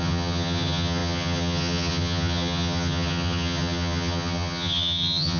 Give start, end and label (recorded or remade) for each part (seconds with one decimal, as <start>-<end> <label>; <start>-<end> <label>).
0.0-5.4 remade